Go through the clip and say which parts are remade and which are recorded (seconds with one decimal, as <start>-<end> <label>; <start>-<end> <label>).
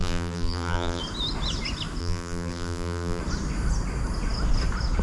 0.0-1.0 remade; 1.0-2.0 recorded; 2.0-3.2 remade; 3.2-5.0 recorded